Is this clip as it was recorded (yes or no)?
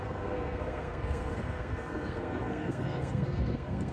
no